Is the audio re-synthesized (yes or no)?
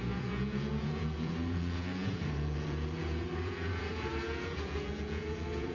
yes